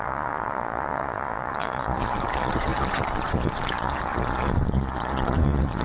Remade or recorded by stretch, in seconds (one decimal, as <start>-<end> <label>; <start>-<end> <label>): 0.0-5.8 remade